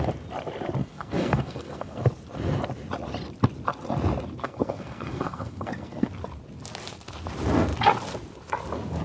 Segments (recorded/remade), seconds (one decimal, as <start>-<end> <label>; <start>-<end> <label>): 0.0-0.8 recorded; 0.8-2.0 remade; 2.0-4.4 recorded; 4.4-6.1 remade; 6.1-9.0 recorded